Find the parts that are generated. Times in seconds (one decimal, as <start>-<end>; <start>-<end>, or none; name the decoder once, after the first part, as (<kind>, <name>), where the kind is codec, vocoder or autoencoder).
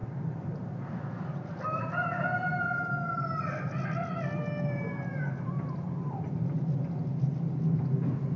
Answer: 0.0-1.0 (vocoder, BigVGAN v2)